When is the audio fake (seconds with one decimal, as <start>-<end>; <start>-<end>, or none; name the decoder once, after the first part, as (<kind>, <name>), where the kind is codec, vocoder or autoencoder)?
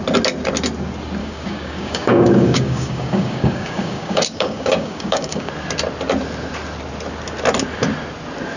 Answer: 1.2-5.5 (codec, DAC)